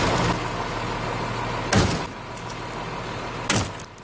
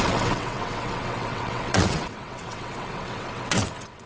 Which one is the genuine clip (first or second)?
first